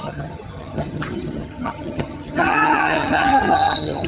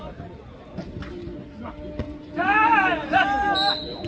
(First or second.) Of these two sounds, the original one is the second